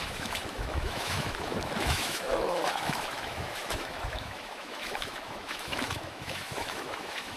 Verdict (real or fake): fake